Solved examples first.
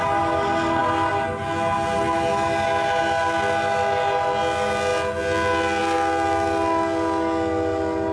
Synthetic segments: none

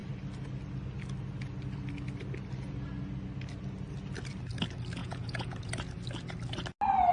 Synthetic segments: 5.0-5.7 (vocoder, Vocos)

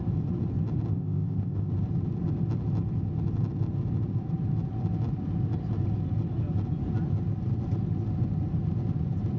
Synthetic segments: 0.9-1.7 (codec, ZipCodec)

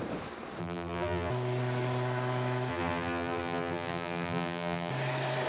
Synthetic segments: 0.6-1.3 (vocoder, BigVGAN v2); 2.7-4.9